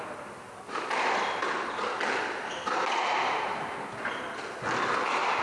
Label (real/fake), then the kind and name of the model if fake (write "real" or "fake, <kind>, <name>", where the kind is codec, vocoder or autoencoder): real